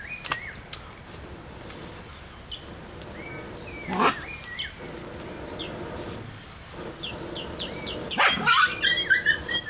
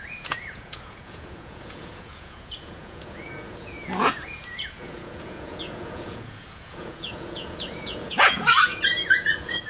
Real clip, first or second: first